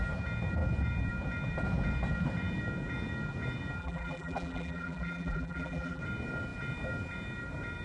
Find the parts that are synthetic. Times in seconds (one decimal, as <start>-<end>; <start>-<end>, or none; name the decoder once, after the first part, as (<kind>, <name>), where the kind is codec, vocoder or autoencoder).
3.8-6.0 (vocoder, BigVGAN v2)